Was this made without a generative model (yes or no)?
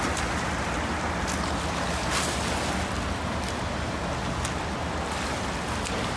yes